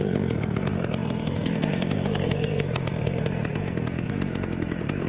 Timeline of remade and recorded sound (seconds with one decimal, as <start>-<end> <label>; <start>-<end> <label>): 0.0-5.1 remade